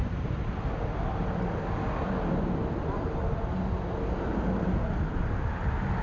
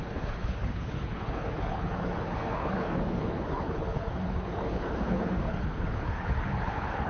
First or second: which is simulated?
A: second